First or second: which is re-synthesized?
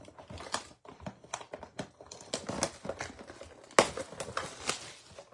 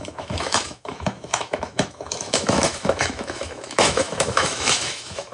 second